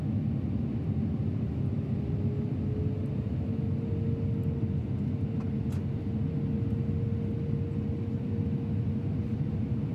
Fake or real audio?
real